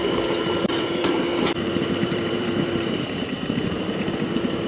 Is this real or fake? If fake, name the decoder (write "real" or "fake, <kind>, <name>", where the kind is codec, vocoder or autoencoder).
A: fake, vocoder, BigVGAN v2